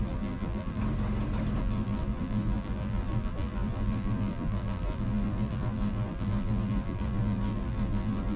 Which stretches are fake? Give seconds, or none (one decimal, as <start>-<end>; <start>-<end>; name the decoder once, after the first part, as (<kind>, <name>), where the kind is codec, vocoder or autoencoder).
0.0-0.8 (vocoder, BigVGAN v2); 1.6-8.4

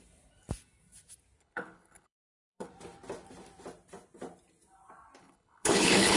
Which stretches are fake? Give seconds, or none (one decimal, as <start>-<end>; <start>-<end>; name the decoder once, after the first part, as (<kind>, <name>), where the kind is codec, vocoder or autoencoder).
1.4-2.7 (codec, HILCodec); 5.2-6.2

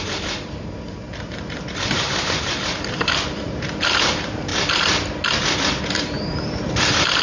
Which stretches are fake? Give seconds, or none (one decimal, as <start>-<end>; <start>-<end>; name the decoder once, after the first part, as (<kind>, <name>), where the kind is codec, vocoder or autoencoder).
0.0-4.5 (vocoder, BigVGAN v2); 5.8-7.2

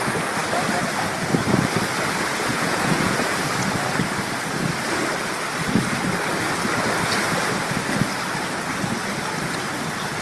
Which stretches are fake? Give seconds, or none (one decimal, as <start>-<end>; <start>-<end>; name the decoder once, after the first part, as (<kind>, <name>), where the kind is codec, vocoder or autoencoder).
2.5-3.2 (vocoder, Vocos)